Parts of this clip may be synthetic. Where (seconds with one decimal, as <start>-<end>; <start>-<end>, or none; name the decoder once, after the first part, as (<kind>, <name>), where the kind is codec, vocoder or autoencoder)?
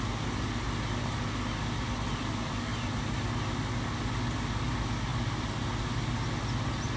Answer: none